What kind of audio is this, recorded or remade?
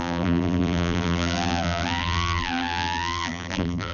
remade